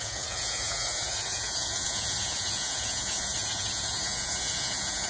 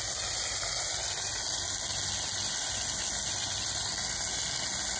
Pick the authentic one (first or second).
second